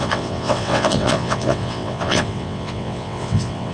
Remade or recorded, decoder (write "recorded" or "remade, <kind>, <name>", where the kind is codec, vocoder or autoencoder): remade, vocoder, WaveNeXt